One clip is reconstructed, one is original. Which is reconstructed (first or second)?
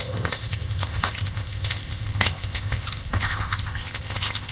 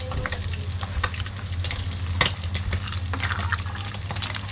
first